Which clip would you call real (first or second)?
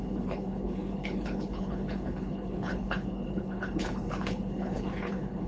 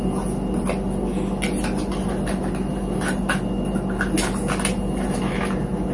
second